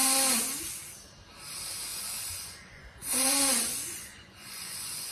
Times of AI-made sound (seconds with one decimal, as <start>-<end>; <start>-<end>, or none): 1.9-5.1